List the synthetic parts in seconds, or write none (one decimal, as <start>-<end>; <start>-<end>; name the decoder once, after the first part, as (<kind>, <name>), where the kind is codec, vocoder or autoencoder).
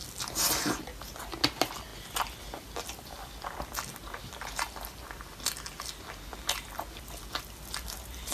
none